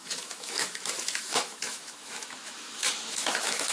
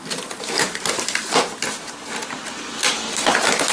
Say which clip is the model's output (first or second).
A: first